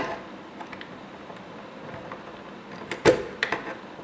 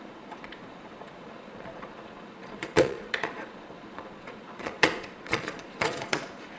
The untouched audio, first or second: first